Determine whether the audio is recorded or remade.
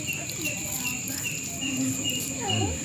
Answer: recorded